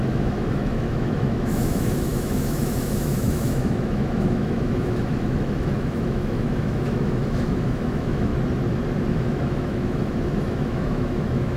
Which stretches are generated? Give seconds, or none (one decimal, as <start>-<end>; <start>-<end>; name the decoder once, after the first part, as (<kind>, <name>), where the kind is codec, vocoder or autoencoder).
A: 0.0-8.3 (autoencoder, DAC-VAE); 9.1-11.6